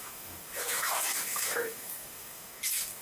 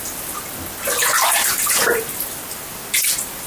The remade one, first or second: first